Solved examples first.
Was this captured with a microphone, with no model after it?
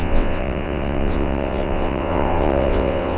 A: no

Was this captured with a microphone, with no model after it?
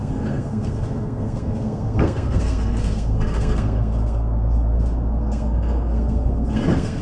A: no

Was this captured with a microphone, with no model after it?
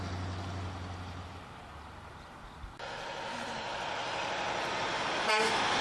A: yes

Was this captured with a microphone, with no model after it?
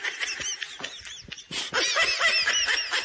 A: yes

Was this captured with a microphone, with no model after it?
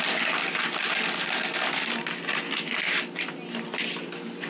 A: yes